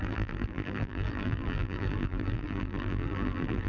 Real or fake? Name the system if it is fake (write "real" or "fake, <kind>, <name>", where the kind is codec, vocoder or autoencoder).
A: fake, vocoder, BigVGAN v2